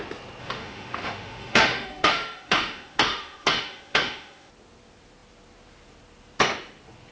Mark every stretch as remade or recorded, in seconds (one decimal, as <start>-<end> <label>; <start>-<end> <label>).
0.0-0.4 recorded; 0.4-4.5 remade; 4.5-7.1 recorded